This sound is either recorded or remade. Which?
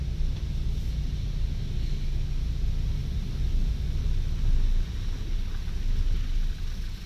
recorded